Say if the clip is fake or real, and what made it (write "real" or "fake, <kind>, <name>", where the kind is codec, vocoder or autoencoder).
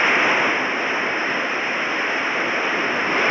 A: real